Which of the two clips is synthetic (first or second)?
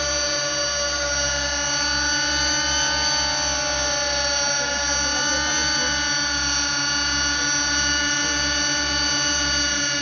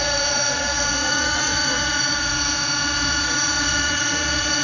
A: second